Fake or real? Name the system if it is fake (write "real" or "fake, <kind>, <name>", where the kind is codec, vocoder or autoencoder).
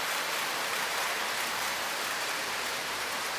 fake, vocoder, BigVGAN v2